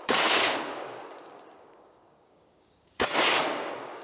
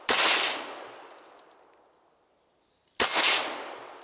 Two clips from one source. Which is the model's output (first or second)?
first